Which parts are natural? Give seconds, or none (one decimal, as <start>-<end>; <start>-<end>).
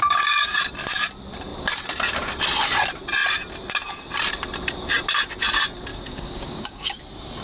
0.6-5.9; 7.0-7.4